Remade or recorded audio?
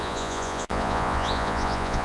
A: remade